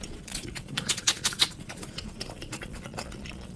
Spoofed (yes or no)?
yes